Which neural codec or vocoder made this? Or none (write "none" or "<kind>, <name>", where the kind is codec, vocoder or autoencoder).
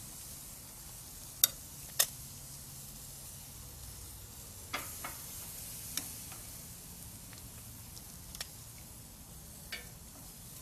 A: none